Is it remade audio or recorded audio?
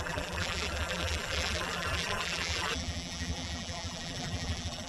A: remade